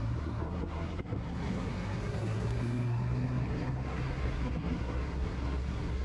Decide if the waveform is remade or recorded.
remade